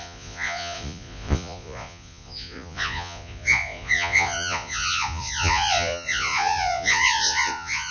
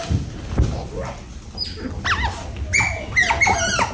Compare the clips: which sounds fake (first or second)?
first